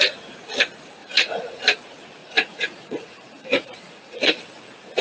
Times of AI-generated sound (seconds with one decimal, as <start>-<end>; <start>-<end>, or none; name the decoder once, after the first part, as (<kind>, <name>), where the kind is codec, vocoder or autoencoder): 1.0-1.6 (vocoder, Vocos); 2.2-4.4